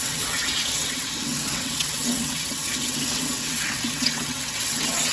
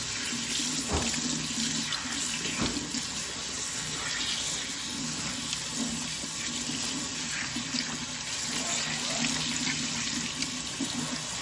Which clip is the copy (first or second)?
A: first